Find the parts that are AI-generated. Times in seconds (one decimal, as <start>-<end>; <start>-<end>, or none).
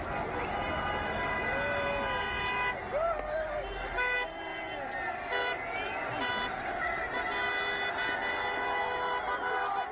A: none